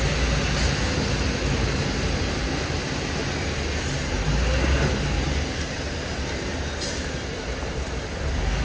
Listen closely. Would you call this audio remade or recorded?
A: recorded